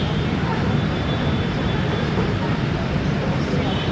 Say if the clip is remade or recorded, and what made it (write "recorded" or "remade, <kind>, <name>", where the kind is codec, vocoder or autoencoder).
remade, vocoder, BigVGAN v2